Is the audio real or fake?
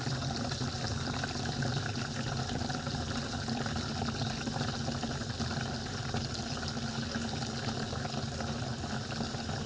real